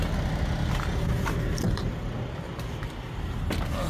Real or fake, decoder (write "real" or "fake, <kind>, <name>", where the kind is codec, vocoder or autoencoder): real